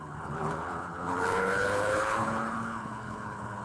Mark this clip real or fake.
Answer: fake